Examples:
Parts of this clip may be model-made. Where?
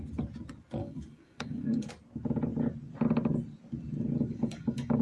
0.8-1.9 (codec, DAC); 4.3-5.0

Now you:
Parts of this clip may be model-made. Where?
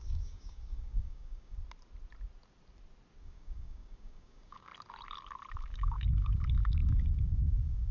0.0-1.6 (codec, DAC); 3.2-4.7; 5.6-7.9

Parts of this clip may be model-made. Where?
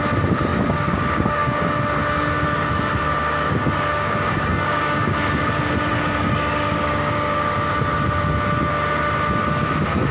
0.5-5.4 (codec, DAC); 5.9-7.7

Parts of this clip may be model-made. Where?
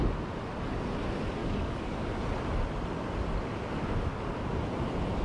1.4-2.2 (codec, DAC); 4.1-4.6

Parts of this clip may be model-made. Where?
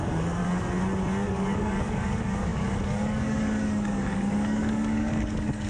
0.0-0.4 (codec, DAC); 1.3-5.7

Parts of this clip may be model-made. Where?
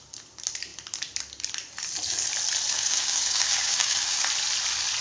2.7-4.2 (codec, DAC)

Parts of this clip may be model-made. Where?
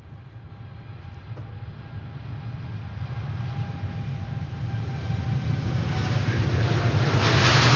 5.6-6.4 (codec, DAC)